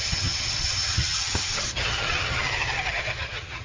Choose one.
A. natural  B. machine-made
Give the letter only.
B